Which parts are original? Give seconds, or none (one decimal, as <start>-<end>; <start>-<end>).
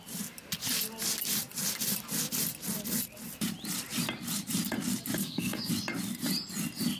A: 0.0-5.2; 5.7-7.0